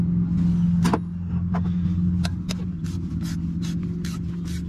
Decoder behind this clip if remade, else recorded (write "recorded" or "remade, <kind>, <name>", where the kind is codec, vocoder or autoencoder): recorded